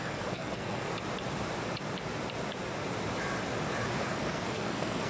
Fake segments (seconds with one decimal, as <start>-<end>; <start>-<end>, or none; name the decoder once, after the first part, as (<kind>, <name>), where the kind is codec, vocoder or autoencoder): 0.0-0.9 (codec, SNAC); 4.0-5.1